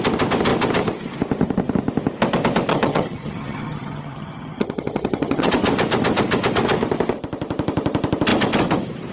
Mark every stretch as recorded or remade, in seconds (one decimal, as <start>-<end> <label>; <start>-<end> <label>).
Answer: 0.0-2.7 recorded; 2.7-5.5 remade; 5.5-9.1 recorded